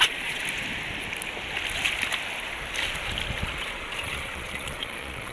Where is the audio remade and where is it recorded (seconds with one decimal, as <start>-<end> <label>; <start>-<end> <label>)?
0.0-0.4 remade; 0.4-3.6 recorded; 3.6-5.3 remade